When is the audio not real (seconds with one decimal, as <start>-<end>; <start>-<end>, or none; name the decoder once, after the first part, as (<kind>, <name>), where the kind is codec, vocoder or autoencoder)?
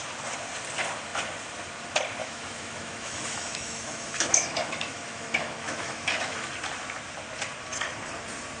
2.2-6.5 (autoencoder, DAC-VAE)